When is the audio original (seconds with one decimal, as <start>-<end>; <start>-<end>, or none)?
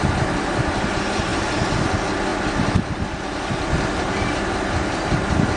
0.0-5.6